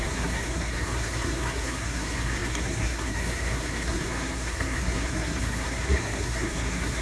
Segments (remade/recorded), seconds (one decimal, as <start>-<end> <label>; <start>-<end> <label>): 0.0-7.0 remade